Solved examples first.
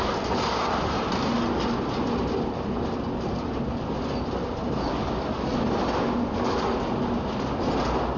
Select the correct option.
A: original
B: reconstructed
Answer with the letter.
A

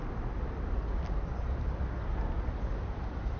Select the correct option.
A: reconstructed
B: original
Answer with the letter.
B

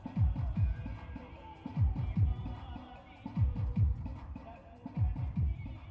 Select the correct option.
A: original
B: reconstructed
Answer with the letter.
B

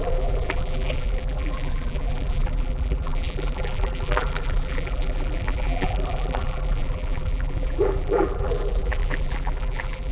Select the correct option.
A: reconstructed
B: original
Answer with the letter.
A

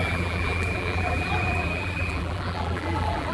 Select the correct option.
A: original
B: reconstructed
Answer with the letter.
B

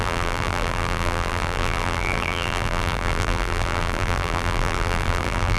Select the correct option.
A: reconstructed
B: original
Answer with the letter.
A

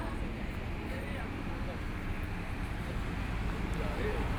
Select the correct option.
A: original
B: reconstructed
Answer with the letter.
A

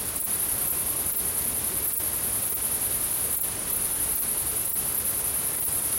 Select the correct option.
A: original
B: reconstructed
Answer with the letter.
A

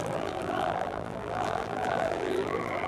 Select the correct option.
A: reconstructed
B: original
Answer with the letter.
A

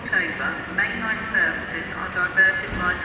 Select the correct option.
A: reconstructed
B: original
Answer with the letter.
B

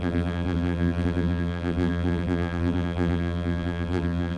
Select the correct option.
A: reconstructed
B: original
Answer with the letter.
A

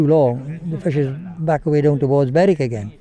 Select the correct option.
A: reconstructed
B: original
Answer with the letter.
B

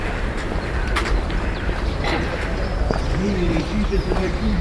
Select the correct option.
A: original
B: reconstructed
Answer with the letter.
B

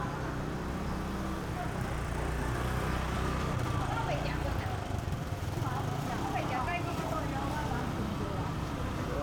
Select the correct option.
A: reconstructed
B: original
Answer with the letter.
A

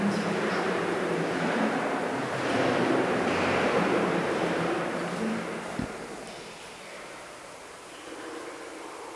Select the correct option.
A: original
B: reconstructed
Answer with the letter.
B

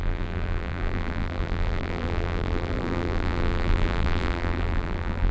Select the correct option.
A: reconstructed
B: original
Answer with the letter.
A